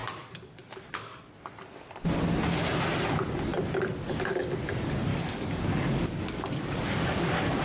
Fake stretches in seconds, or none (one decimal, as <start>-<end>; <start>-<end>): 0.0-1.2; 5.1-7.6